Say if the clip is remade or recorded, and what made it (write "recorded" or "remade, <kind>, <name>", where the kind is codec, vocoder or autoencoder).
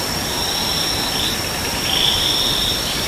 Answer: remade, vocoder, BigVGAN v2